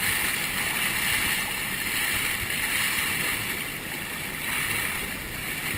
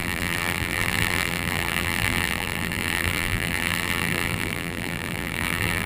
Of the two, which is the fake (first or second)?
second